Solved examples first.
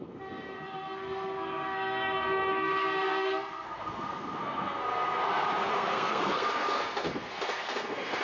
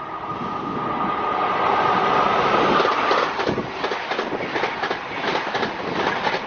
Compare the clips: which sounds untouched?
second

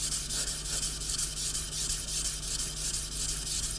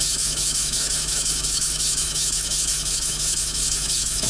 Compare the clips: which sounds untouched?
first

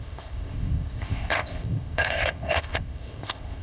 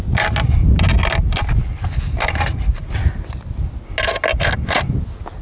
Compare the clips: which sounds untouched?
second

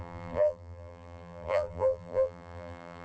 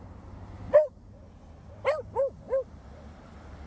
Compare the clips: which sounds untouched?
second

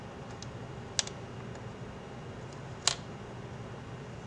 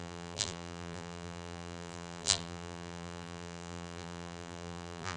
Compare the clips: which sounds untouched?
first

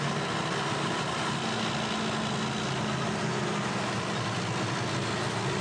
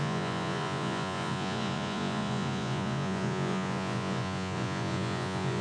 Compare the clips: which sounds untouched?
first